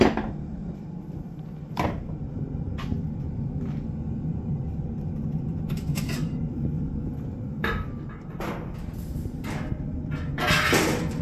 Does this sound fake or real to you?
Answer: real